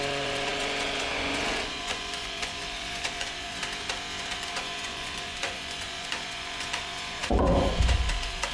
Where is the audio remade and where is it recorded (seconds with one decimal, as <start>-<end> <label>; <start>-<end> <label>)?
0.0-3.6 remade; 3.6-4.2 recorded; 4.2-8.5 remade